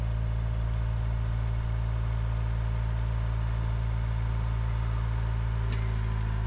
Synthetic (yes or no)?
no